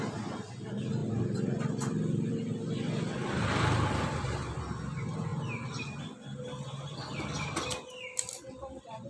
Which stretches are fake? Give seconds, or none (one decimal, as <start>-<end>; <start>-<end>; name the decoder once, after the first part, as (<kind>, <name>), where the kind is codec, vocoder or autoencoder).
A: 1.0-4.6 (vocoder, BigVGAN v2)